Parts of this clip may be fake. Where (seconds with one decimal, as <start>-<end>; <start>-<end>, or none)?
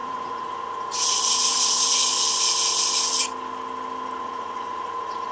0.0-2.1; 4.2-5.3